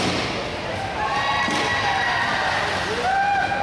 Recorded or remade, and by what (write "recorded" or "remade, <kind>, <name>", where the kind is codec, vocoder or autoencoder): recorded